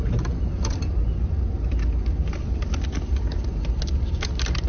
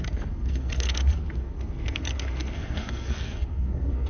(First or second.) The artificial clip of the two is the second